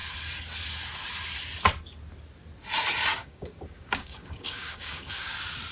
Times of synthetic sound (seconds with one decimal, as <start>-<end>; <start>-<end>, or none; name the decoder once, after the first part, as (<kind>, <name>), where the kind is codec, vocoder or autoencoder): 3.2-5.3 (codec, DAC)